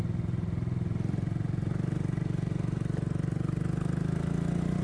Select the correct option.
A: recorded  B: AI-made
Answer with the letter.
A